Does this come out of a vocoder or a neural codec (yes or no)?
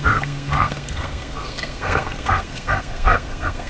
yes